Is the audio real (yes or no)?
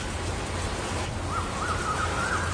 yes